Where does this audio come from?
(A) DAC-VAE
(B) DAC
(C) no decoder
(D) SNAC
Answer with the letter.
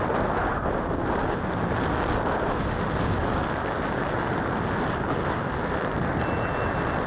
C